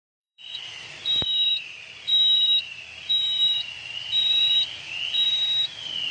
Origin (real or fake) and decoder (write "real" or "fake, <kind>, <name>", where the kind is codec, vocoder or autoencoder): fake, vocoder, BigVGAN v2